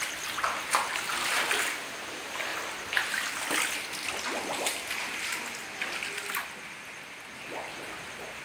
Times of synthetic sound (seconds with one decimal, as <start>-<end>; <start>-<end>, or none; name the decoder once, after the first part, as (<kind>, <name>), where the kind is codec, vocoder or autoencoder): none